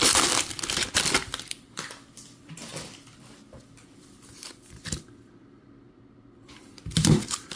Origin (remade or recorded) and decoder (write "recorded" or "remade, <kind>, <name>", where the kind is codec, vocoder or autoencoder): remade, vocoder, BigVGAN v2